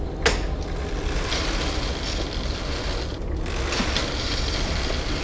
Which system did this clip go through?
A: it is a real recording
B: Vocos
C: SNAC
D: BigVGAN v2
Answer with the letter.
A